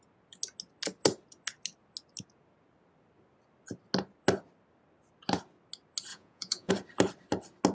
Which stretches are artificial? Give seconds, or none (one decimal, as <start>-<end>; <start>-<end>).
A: 6.1-6.7